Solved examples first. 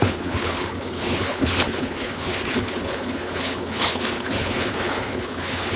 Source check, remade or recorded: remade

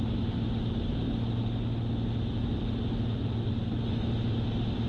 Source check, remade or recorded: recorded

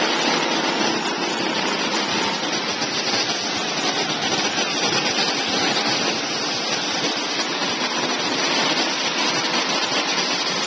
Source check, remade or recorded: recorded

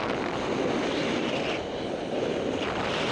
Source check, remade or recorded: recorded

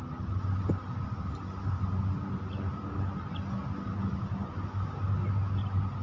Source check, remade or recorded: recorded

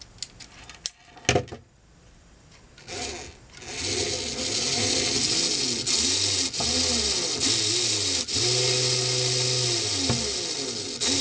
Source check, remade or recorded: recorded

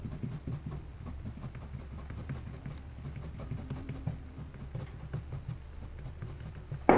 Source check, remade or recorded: recorded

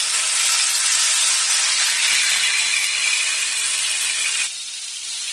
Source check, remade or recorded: recorded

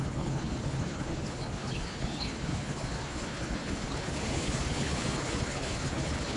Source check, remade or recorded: remade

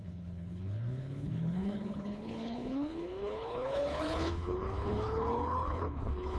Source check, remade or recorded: remade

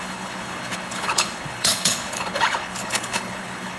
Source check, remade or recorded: remade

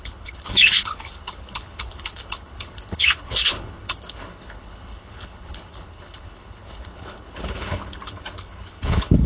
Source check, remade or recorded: remade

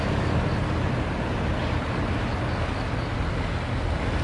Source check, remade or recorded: recorded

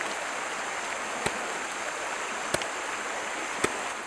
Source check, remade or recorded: recorded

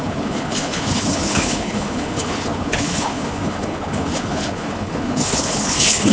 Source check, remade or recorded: remade